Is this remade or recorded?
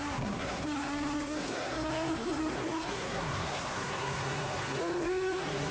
remade